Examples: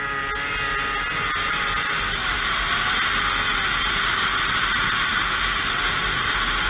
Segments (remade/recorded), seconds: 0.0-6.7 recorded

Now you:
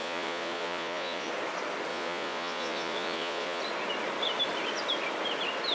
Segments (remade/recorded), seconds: 0.0-1.3 remade; 1.3-1.9 recorded; 1.9-3.6 remade; 3.6-5.7 recorded

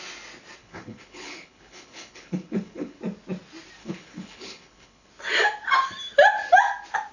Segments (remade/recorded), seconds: 0.0-0.6 recorded; 0.6-3.0 remade; 3.0-3.8 recorded; 3.8-5.1 remade; 5.1-7.1 recorded